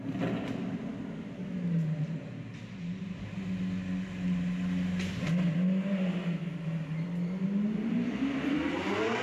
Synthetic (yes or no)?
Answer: no